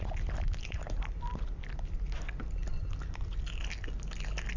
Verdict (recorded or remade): recorded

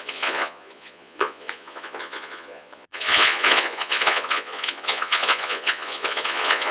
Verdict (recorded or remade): remade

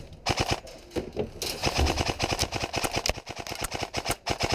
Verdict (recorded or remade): recorded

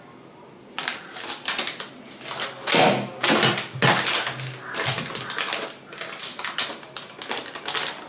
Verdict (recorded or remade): recorded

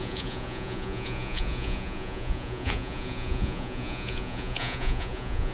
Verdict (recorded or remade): remade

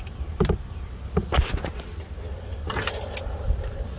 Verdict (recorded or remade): recorded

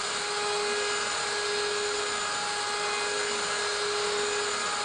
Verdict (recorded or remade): recorded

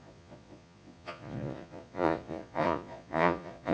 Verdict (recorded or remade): remade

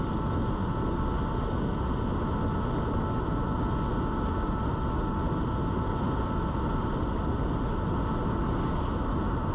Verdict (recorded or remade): recorded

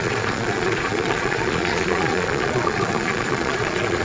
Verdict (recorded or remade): remade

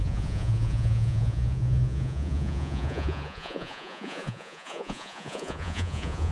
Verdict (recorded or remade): remade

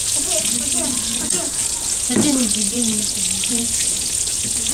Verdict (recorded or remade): remade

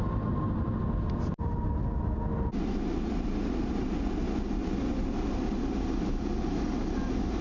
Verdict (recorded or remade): recorded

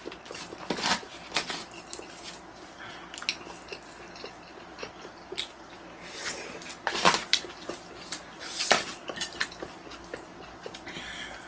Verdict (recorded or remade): recorded